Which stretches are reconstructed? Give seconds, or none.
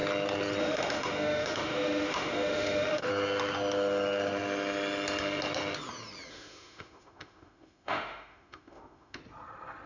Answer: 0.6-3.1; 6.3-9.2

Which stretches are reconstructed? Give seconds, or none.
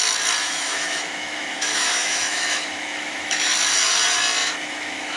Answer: 0.4-3.5; 4.4-5.2